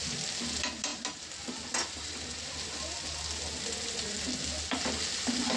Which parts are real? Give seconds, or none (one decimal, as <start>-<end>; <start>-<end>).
0.0-5.6